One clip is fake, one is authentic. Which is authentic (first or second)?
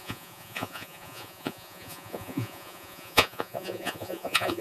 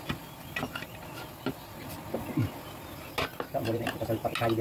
second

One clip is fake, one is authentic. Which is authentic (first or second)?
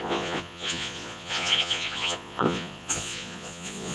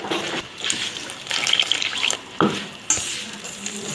second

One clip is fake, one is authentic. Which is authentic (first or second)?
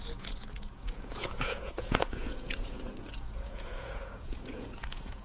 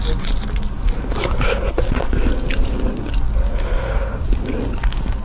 second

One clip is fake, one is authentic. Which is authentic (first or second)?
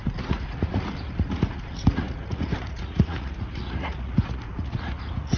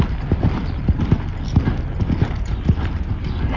second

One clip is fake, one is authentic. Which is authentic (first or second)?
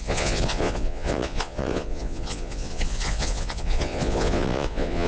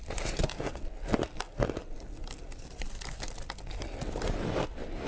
second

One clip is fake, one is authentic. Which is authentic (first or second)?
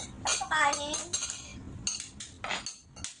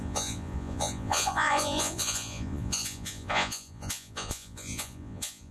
first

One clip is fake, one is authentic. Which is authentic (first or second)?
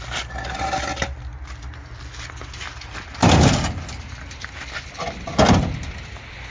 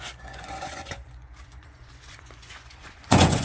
first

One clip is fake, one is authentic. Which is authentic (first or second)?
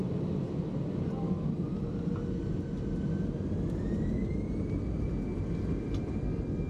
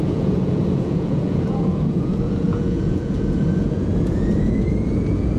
first